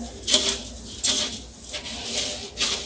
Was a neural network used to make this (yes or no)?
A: no